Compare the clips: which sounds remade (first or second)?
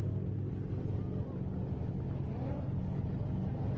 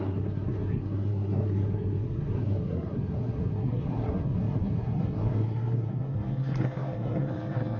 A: second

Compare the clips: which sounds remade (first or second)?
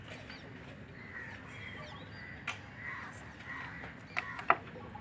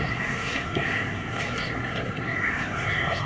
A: second